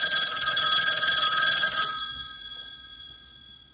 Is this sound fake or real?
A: fake